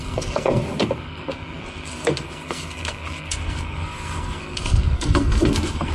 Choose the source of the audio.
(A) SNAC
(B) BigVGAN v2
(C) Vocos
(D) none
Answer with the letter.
A